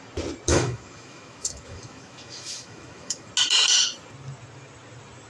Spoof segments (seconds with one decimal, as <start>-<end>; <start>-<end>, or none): 0.5-3.3